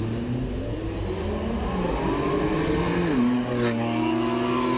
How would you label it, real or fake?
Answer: real